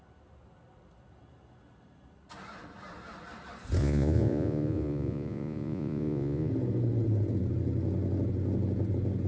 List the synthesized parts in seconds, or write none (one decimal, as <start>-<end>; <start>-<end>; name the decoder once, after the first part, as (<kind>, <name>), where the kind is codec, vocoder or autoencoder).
3.8-6.5 (vocoder, Vocos)